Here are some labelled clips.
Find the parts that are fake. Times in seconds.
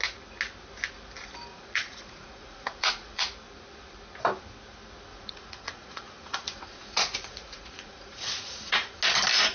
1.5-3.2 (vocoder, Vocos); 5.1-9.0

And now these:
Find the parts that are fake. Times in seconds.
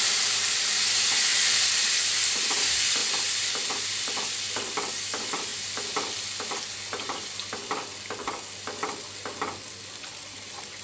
0.0-5.5 (vocoder, BigVGAN v2); 10.0-10.8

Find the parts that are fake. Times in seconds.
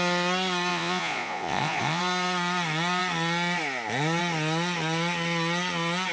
0.7-2.0 (vocoder, Vocos)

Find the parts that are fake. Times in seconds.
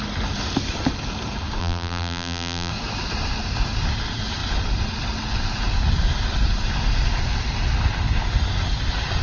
1.6-2.7 (vocoder, BigVGAN v2)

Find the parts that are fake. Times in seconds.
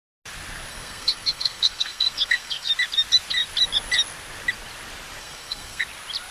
0.7-2.7 (codec, SNAC); 5.2-5.8